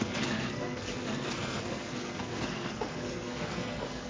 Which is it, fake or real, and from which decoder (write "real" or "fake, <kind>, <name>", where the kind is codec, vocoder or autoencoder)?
fake, codec, SNAC